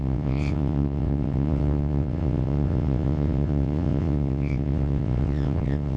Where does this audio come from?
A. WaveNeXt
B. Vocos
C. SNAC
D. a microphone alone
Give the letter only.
A